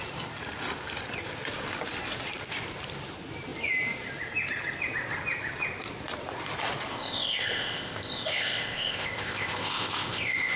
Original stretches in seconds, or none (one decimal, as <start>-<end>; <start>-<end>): 0.0-6.9